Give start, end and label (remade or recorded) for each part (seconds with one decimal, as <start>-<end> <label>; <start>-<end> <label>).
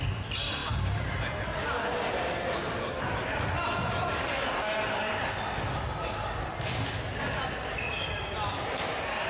0.0-9.3 recorded